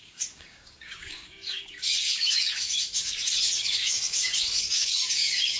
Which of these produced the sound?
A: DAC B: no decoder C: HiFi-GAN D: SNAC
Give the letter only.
A